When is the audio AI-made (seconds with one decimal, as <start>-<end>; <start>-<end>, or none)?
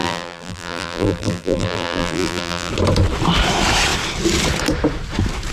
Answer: 0.0-2.7